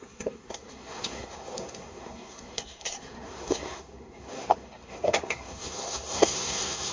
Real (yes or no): no